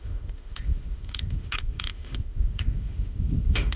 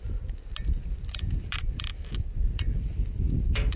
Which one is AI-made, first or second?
first